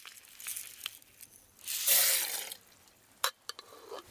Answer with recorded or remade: recorded